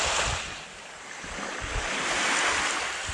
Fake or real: real